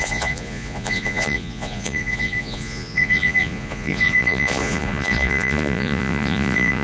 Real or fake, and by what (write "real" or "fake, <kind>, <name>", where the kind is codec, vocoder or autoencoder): fake, vocoder, Vocos